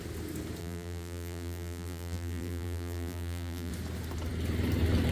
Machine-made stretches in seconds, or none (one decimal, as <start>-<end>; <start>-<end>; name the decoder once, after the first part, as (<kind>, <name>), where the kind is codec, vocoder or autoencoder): 0.6-3.7 (vocoder, BigVGAN v2)